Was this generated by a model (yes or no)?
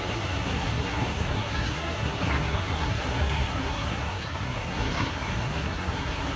yes